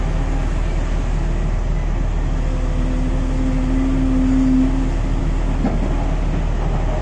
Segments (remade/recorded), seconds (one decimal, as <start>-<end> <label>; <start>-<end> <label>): 0.0-7.0 recorded